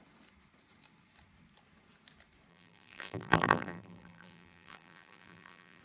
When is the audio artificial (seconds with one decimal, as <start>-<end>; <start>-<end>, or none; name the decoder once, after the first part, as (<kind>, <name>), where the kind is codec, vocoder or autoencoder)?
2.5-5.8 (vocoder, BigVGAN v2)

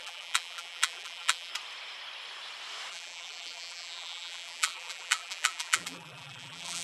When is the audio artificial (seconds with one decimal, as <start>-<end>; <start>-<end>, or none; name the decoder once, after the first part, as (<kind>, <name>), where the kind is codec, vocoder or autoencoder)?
0.0-1.5 (vocoder, BigVGAN v2); 2.9-6.8

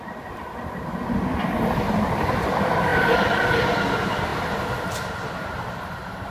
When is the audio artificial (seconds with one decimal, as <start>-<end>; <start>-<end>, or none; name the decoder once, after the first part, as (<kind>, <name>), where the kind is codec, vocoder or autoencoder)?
none

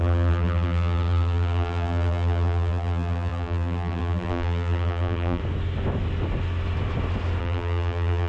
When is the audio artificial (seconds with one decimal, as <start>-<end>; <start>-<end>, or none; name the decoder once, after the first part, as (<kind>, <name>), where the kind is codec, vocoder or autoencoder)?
0.0-5.4 (vocoder, BigVGAN v2); 7.4-8.3

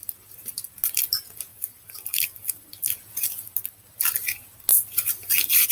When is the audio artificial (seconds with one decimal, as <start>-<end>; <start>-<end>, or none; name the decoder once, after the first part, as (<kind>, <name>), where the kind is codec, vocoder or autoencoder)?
1.5-2.9 (vocoder, BigVGAN v2); 4.7-5.3

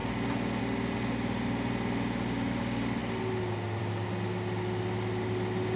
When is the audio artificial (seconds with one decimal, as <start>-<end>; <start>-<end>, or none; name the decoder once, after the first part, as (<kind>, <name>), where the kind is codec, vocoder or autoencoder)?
none

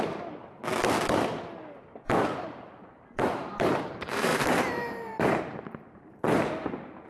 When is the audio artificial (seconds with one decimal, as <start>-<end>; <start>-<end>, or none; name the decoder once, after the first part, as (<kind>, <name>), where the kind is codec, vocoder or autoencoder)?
0.0-0.4 (vocoder, BigVGAN v2); 2.4-7.1

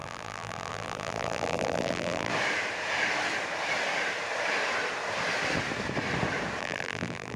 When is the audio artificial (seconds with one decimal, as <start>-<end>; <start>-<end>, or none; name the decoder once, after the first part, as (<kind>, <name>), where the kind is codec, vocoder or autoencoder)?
0.0-2.3 (vocoder, BigVGAN v2); 6.6-7.4